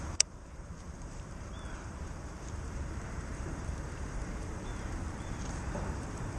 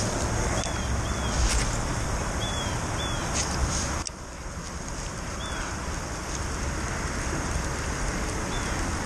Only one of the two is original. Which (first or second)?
second